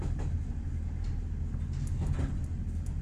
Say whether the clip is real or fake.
real